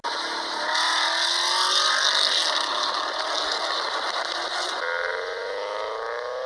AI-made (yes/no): no